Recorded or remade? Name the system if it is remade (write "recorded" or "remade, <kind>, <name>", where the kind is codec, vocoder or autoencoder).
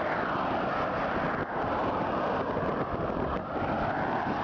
recorded